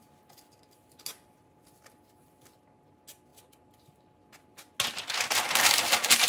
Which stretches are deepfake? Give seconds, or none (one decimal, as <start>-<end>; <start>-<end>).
none